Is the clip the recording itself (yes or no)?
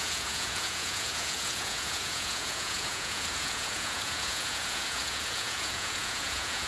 no